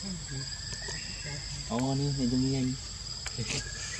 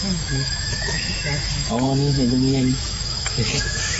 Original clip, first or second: first